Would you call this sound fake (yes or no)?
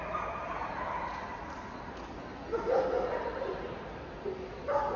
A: no